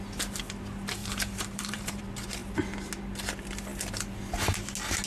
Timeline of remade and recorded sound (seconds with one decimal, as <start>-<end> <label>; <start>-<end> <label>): 0.0-1.0 recorded; 1.0-2.0 remade; 2.0-5.1 recorded